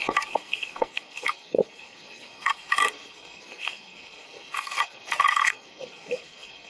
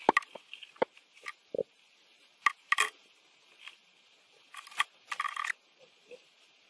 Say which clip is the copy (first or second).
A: first